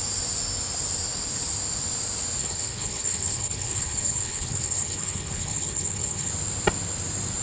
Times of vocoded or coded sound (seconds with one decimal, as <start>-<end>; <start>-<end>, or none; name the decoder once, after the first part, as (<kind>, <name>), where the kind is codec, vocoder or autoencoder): 2.4-6.3 (codec, HILCodec)